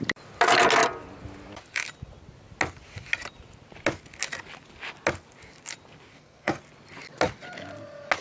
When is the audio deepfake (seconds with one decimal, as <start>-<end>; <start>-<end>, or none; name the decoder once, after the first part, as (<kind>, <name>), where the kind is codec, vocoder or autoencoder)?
6.1-6.6 (codec, SNAC)